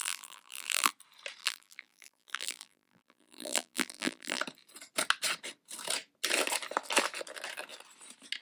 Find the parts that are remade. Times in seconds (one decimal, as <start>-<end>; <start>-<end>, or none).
0.0-0.9; 1.4-4.4